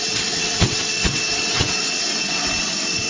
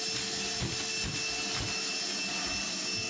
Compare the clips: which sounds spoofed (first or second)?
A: first